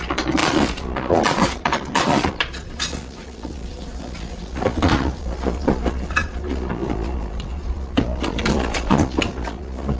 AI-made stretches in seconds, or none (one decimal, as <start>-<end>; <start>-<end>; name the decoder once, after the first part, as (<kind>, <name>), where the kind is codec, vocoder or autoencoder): 0.0-10.0 (vocoder, Vocos)